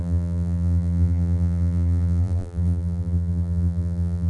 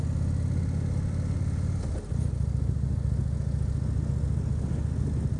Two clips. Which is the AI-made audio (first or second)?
first